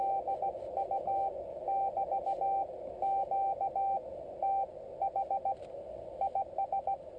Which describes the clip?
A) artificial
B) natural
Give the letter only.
B